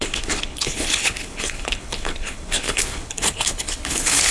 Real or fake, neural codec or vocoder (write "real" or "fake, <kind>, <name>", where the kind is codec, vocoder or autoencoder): fake, codec, HILCodec